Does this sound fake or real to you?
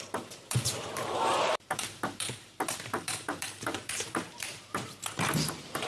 fake